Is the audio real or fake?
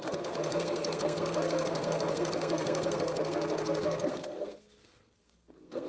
fake